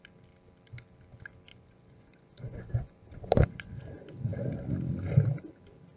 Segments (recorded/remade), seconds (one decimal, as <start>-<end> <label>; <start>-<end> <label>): 0.0-1.5 recorded; 1.5-3.7 remade; 3.7-6.0 recorded